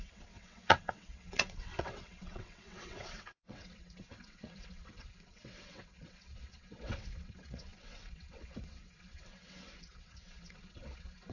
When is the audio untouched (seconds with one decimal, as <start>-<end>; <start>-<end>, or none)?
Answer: none